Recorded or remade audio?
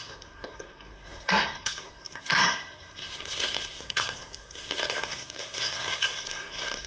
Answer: remade